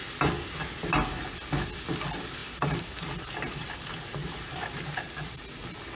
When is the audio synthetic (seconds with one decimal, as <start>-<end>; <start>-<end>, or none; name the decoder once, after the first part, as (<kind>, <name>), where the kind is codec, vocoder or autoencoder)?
2.4-3.7 (vocoder, BigVGAN v2); 4.2-4.8